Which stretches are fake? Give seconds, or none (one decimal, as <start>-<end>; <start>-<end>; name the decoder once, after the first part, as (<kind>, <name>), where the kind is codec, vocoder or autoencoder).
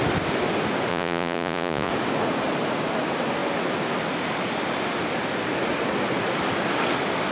0.9-1.9 (vocoder, Vocos)